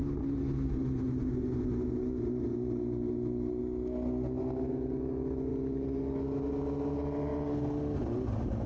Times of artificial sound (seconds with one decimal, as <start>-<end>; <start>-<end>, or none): none